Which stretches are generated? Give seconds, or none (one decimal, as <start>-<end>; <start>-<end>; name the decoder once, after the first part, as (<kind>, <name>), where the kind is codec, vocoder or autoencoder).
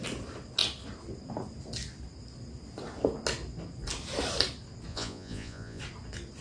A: 4.9-5.8 (vocoder, Vocos)